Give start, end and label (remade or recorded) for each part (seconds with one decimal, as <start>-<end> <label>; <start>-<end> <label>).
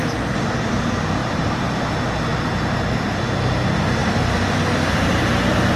0.0-1.2 recorded; 1.2-1.8 remade; 1.8-4.0 recorded; 4.0-4.6 remade; 4.6-5.8 recorded